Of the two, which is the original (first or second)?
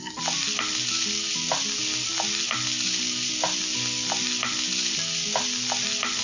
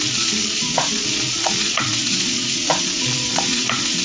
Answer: first